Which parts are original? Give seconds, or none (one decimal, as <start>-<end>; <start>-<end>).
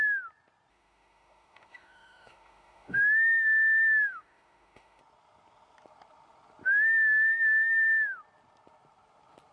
0.0-0.7; 5.0-9.5